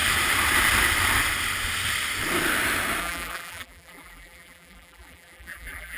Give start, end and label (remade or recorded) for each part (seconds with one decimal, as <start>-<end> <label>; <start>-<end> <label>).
0.0-3.0 recorded; 3.0-6.0 remade